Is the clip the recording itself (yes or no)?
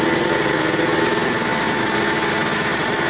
yes